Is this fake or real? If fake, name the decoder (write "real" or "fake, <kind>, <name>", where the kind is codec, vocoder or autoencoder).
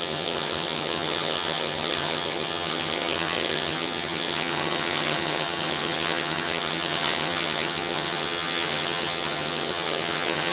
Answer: fake, vocoder, HiFi-GAN